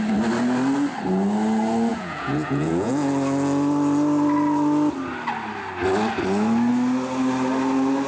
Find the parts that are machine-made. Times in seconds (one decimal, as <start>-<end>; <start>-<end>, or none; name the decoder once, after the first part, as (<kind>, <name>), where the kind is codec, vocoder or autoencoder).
1.9-2.9 (vocoder, Vocos)

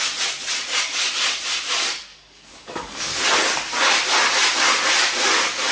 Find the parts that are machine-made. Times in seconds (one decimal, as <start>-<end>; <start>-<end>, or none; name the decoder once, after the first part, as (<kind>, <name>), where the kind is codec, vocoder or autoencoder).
2.1-3.2 (codec, DAC)

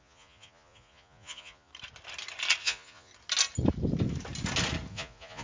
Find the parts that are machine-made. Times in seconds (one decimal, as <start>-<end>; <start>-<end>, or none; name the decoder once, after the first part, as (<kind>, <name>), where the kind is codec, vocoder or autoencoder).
0.0-1.7 (vocoder, Vocos); 2.6-3.1; 4.9-5.4

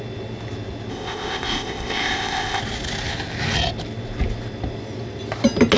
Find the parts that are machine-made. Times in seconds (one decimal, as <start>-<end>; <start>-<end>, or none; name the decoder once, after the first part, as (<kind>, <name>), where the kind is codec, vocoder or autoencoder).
0.9-2.6 (codec, ZipCodec)

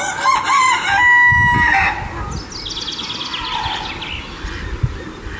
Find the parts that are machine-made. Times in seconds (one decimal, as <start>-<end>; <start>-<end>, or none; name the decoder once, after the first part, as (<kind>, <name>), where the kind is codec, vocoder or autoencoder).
none

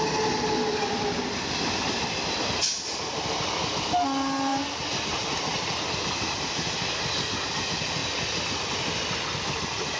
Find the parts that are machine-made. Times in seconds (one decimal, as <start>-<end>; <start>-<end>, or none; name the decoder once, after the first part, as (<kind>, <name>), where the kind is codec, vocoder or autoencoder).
8.0-8.7 (vocoder, BigVGAN v2)